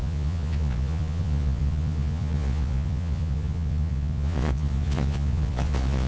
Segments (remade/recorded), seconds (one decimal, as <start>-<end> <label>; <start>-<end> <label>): 0.0-6.1 remade